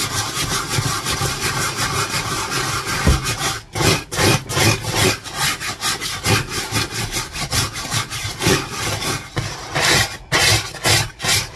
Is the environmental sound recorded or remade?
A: recorded